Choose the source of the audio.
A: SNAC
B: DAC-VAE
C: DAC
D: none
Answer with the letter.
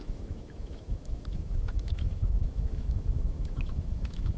B